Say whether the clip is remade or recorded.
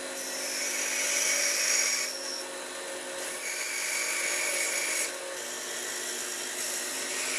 recorded